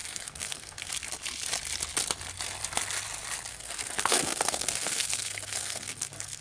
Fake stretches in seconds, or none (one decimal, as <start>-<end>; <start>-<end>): 0.0-0.9; 3.5-6.4